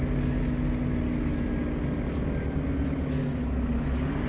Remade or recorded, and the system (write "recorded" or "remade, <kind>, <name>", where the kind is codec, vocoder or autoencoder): recorded